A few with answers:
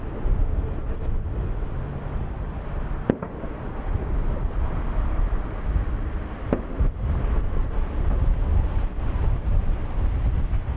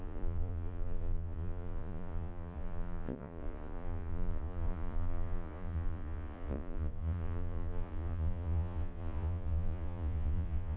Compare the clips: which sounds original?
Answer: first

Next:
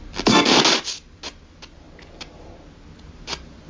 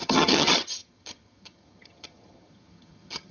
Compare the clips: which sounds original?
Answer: first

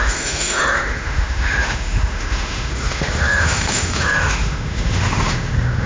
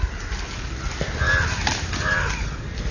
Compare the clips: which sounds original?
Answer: second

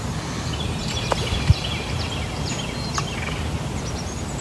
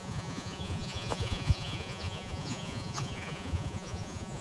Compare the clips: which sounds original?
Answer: first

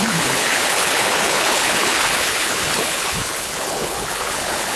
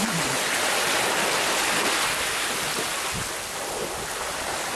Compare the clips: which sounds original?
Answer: second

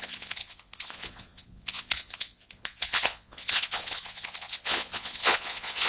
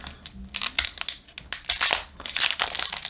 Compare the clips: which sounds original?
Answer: second